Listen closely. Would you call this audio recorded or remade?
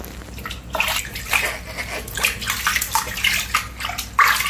recorded